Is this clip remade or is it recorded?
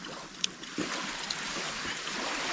recorded